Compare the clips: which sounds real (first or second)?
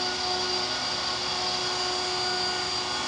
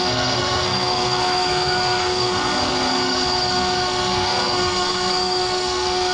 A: first